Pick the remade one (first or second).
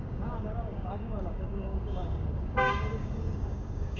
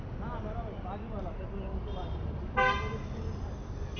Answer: first